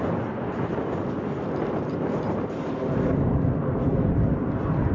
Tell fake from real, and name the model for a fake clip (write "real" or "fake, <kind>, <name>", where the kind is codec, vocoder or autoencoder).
real